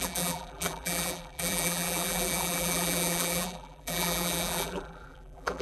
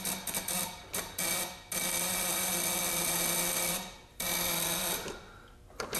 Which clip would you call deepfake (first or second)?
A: first